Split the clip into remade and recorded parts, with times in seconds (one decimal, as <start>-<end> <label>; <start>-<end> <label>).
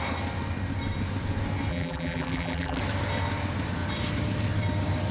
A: 0.0-1.7 recorded; 1.7-2.8 remade; 2.8-5.1 recorded